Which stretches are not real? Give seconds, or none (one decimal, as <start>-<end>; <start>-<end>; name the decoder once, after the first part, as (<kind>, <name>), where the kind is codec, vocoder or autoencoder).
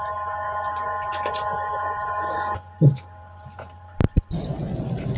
1.1-4.2 (vocoder, BigVGAN v2)